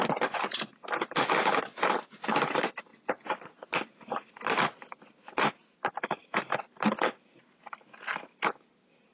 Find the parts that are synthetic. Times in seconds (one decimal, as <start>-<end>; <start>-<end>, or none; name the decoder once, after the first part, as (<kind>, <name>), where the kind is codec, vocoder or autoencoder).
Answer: none